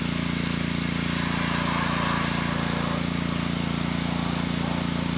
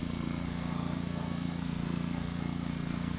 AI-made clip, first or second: second